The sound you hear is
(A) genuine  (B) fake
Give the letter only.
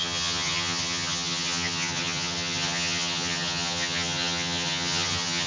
B